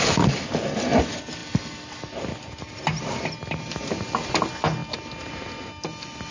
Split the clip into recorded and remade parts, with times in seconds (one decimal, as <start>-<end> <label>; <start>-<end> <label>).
0.0-6.3 recorded